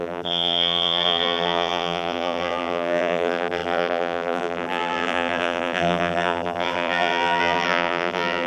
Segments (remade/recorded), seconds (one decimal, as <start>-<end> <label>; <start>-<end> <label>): 0.0-8.5 remade